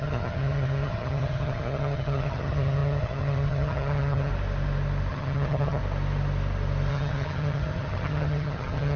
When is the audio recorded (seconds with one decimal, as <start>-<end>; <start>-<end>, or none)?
4.3-5.1; 5.8-6.9